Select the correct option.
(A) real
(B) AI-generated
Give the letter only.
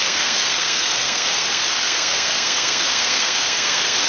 B